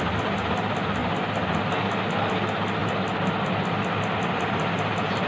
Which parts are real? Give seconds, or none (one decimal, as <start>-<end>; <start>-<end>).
0.0-5.3